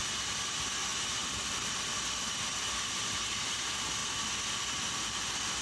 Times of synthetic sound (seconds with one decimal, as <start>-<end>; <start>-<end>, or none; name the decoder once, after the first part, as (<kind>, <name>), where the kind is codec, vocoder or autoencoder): none